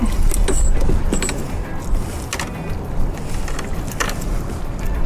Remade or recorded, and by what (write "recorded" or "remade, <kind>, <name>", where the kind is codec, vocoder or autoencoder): recorded